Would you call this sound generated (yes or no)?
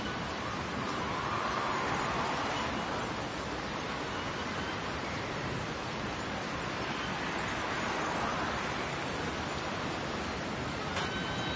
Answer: no